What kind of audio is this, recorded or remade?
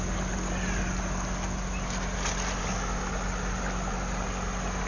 recorded